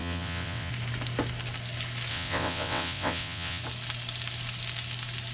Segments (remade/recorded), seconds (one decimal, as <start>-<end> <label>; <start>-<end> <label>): 0.0-0.7 remade; 0.7-2.1 recorded; 2.1-3.6 remade; 3.6-5.3 recorded